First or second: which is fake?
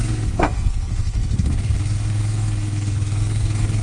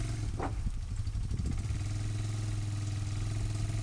first